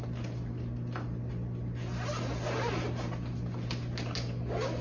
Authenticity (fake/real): real